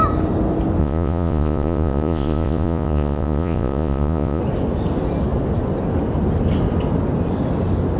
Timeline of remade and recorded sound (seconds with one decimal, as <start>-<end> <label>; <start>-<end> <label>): 0.0-0.8 recorded; 0.8-4.4 remade; 4.4-8.0 recorded